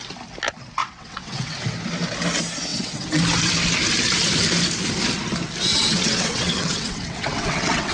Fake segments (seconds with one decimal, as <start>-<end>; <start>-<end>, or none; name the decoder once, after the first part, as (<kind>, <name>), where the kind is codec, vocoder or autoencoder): 0.8-1.6 (vocoder, WaveNeXt); 2.7-3.2; 5.7-7.9